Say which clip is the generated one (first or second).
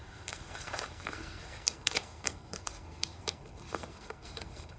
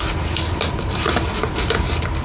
first